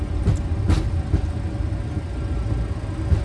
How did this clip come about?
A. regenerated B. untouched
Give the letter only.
B